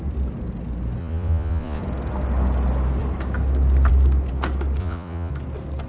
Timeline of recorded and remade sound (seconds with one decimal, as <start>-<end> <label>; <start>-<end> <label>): 0.0-1.0 recorded; 1.0-1.8 remade; 1.8-4.8 recorded; 4.8-5.3 remade; 5.3-5.9 recorded